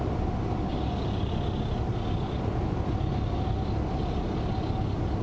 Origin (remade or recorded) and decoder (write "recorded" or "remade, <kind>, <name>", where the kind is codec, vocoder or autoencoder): recorded